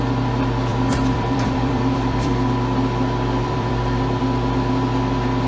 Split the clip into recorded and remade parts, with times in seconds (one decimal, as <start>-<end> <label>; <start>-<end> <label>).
0.0-0.7 recorded; 0.7-2.5 remade; 2.5-3.4 recorded; 3.4-4.2 remade; 4.2-5.5 recorded